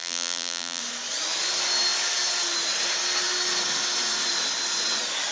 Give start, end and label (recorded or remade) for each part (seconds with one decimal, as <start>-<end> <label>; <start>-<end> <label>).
0.0-0.8 remade; 0.8-5.3 recorded